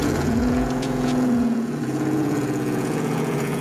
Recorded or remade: remade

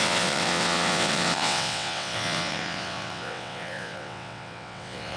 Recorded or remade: remade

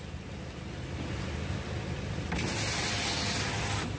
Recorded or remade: recorded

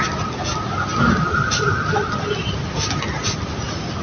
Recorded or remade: recorded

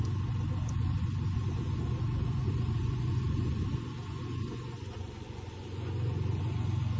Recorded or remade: remade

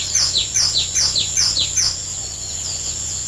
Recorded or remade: remade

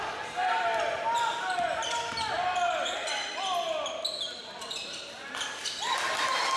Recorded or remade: recorded